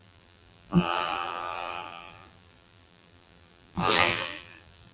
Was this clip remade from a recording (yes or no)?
yes